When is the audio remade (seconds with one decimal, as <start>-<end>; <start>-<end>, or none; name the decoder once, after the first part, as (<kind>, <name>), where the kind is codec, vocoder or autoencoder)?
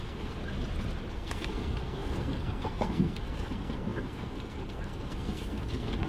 0.0-0.4 (codec, SNAC); 1.1-6.1